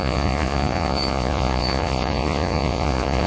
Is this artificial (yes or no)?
yes